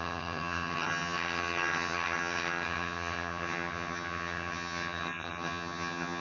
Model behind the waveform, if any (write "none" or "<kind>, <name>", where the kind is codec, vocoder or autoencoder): vocoder, HiFi-GAN